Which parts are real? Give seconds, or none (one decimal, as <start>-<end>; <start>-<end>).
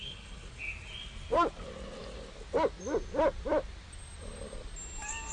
0.6-5.3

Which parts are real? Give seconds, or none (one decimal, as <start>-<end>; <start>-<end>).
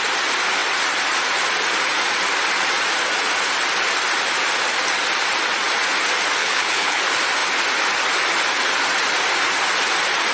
0.0-6.4; 7.0-10.3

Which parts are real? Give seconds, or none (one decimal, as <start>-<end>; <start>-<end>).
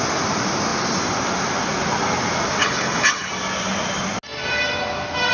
0.0-2.6; 3.3-5.3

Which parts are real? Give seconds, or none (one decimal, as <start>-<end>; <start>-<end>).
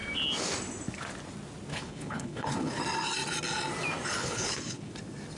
0.0-1.7; 2.8-4.2; 4.9-5.4